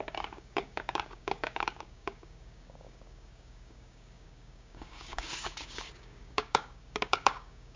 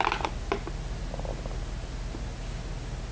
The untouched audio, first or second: second